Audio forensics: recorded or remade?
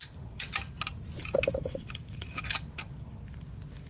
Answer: recorded